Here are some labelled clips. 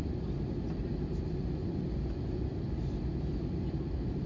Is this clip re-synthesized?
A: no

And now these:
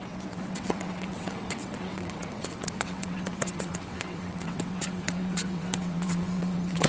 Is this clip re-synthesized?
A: yes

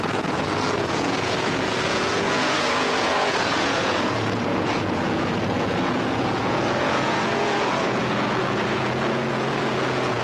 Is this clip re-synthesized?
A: yes